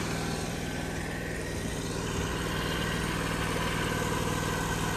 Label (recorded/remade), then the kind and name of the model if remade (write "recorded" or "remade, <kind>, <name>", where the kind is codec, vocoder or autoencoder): recorded